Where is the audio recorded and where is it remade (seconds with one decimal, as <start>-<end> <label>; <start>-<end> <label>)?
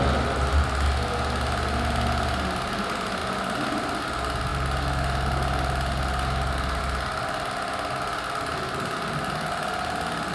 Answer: 0.0-10.3 recorded